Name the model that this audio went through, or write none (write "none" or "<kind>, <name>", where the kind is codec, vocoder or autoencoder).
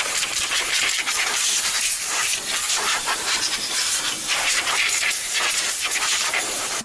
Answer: vocoder, BigVGAN v2